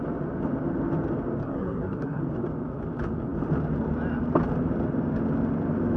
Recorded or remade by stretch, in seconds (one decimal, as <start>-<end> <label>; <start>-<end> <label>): 0.0-1.4 recorded; 1.4-2.2 remade; 2.2-6.0 recorded